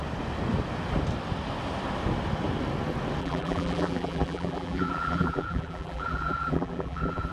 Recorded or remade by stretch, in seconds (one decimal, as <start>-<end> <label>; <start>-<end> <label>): 0.0-3.2 recorded; 3.2-7.3 remade